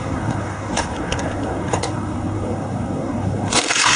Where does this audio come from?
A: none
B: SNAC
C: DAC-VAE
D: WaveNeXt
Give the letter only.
B